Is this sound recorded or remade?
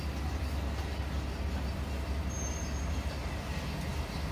recorded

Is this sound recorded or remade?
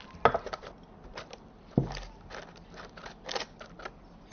recorded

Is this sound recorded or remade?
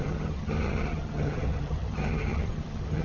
remade